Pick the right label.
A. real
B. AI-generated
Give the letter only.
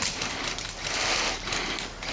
A